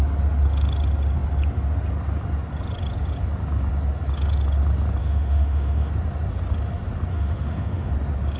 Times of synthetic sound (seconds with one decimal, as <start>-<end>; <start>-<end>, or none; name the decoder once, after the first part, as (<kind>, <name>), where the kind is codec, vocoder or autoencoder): 5.0-5.9 (autoencoder, DAC-VAE); 7.1-7.9